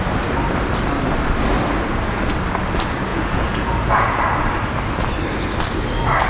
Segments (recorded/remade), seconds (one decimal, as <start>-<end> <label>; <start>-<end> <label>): 0.0-3.1 recorded; 3.1-4.2 remade; 4.2-6.3 recorded